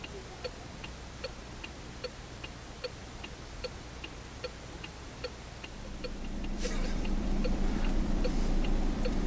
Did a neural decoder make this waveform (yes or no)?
yes